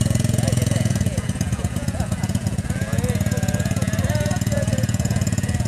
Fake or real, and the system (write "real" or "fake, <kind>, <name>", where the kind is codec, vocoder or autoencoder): fake, vocoder, Vocos